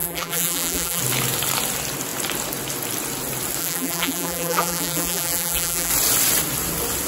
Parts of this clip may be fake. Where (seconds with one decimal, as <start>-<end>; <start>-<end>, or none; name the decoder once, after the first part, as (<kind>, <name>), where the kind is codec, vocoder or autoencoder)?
0.0-1.0 (vocoder, BigVGAN v2); 3.6-5.9